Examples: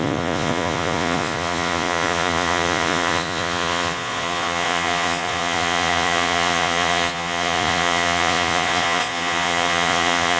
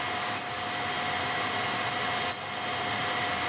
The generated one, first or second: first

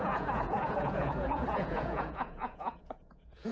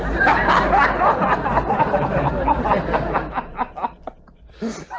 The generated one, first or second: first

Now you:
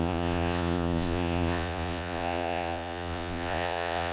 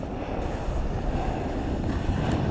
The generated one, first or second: first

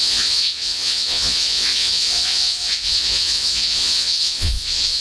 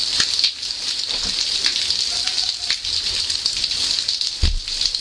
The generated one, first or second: first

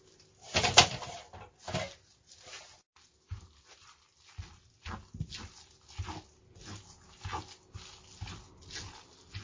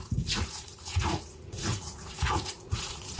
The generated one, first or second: second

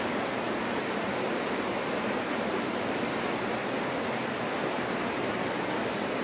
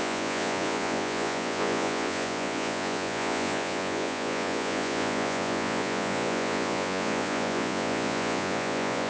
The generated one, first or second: second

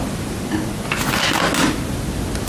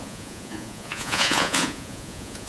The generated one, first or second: second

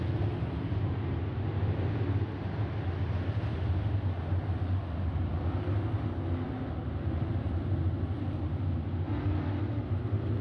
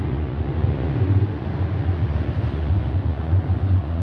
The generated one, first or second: second